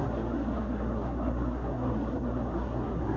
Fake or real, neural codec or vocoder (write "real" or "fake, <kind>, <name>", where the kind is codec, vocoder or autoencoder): fake, codec, SNAC